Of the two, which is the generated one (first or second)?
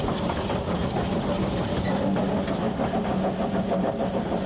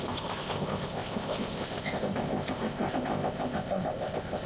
second